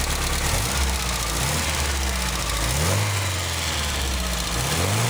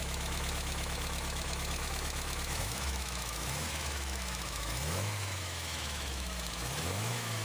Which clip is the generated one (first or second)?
second